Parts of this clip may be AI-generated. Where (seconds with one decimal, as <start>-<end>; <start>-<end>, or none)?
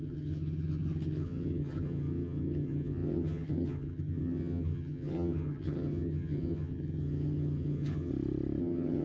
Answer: 0.0-8.1; 8.6-9.0